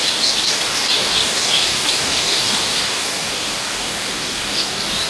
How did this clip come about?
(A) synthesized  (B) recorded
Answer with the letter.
A